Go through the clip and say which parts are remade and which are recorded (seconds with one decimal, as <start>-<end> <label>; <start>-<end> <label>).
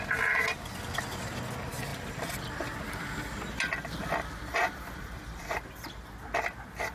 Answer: 0.0-4.5 recorded; 4.5-5.7 remade; 5.7-6.9 recorded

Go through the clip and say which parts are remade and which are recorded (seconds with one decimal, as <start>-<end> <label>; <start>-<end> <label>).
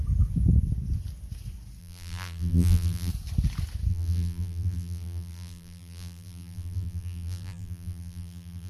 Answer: 0.0-1.8 recorded; 1.8-3.1 remade; 3.1-3.9 recorded; 3.9-8.7 remade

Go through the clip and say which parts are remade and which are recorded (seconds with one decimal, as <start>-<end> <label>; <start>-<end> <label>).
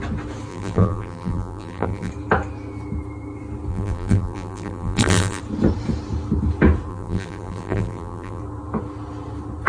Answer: 0.0-0.5 recorded; 0.5-2.1 remade; 2.1-3.7 recorded; 3.7-5.4 remade; 5.4-6.9 recorded; 6.9-8.4 remade; 8.4-9.7 recorded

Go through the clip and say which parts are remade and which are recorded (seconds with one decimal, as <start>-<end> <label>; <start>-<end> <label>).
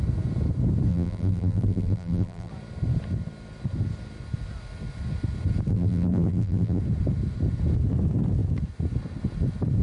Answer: 0.0-0.9 recorded; 0.9-2.5 remade; 2.5-5.7 recorded; 5.7-6.8 remade; 6.8-9.8 recorded